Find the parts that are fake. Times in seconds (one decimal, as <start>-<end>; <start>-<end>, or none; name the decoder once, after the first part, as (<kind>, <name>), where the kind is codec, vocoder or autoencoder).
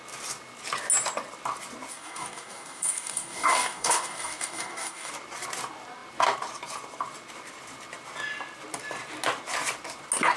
1.9-5.1 (codec, DAC)